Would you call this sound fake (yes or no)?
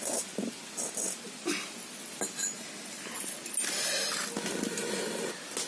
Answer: no